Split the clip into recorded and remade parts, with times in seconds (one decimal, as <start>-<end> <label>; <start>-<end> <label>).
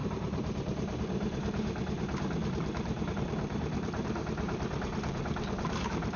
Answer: 0.0-6.2 remade